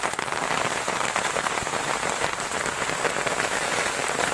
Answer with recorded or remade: remade